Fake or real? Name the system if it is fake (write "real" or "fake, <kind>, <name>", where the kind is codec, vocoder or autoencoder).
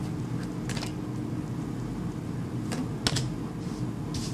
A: real